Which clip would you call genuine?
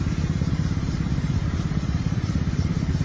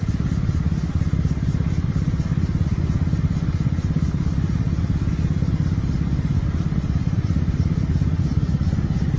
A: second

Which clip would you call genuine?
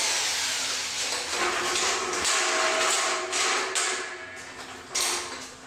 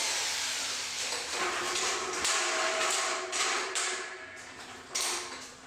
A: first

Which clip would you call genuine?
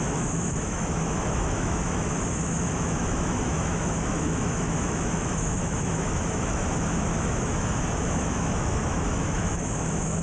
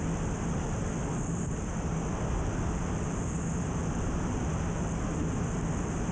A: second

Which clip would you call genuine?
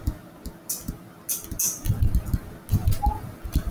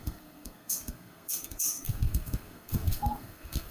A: first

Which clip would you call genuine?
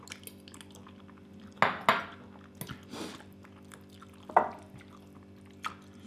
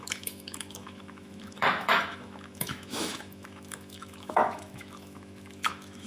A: first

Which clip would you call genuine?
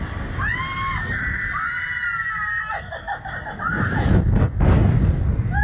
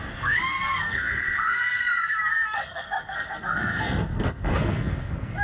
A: first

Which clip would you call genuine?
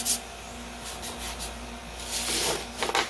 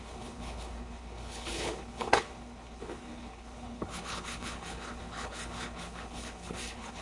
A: first